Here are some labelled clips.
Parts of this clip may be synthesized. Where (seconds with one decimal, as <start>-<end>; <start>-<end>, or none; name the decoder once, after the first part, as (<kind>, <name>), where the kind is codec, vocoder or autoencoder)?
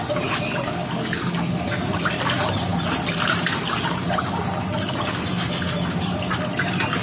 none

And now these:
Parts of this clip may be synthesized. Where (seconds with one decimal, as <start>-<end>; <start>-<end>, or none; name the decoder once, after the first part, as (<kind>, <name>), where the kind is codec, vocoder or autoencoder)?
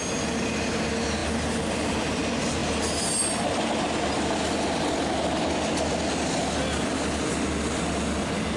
none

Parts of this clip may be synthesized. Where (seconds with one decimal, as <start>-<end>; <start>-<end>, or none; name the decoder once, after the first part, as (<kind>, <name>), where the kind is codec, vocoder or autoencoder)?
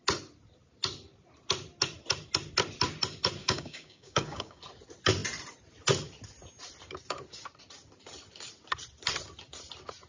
3.4-4.6 (codec, DAC)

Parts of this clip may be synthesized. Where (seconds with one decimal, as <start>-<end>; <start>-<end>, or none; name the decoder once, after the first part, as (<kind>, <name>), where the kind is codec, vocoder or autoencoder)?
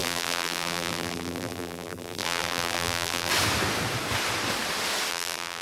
0.0-3.3 (vocoder, BigVGAN v2); 5.1-5.6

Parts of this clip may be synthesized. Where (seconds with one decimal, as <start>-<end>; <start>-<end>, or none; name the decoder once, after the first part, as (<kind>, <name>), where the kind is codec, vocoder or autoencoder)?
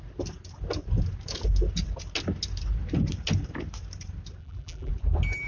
4.4-4.9 (vocoder, BigVGAN v2)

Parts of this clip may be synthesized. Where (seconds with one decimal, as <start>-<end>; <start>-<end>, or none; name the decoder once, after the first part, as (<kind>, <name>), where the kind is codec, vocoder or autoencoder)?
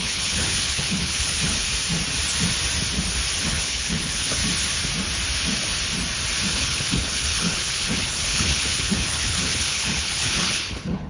0.0-1.7 (codec, HILCodec); 3.4-4.4; 6.5-11.1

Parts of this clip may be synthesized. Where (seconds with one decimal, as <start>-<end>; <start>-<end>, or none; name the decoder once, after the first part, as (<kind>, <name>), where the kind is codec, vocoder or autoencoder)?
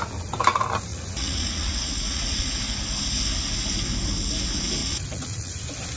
0.9-2.6 (vocoder, Vocos); 4.8-5.5